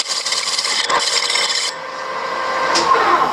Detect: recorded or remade recorded